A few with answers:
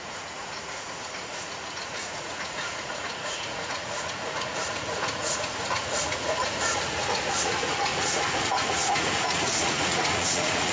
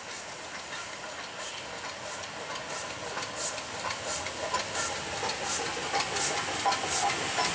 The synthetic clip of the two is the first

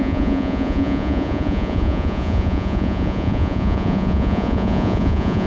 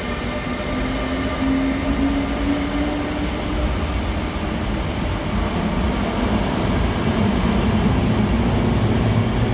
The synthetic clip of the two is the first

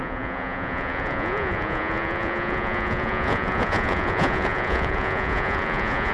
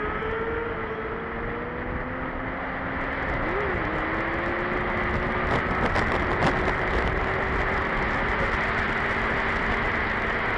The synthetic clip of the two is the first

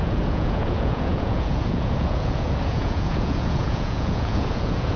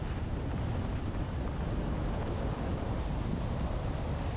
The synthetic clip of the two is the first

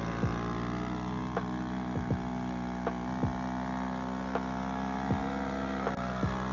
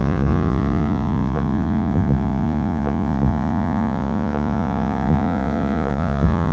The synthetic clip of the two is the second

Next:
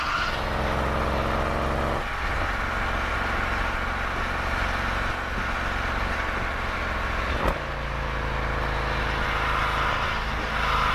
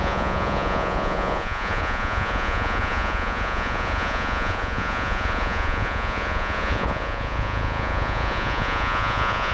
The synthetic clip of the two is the second